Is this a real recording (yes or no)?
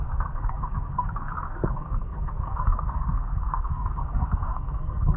no